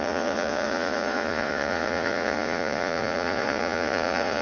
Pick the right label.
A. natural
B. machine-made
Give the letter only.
B